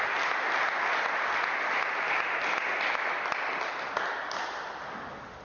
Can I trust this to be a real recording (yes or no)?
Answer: yes